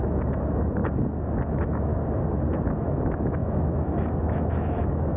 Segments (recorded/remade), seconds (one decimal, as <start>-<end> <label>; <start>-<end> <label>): 0.0-0.8 remade; 0.8-1.5 recorded; 1.5-1.9 remade; 1.9-2.7 recorded; 2.7-5.2 remade